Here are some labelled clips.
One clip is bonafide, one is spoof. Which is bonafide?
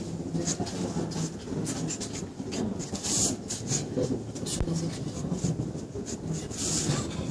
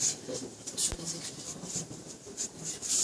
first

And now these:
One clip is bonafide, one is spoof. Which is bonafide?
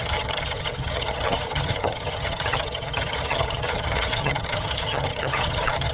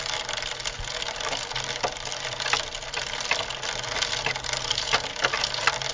second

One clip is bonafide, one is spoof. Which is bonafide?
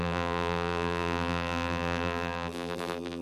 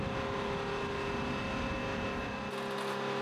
second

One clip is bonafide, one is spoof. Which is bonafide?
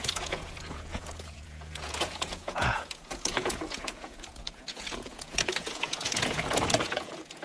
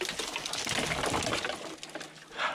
second